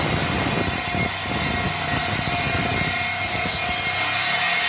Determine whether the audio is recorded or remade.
recorded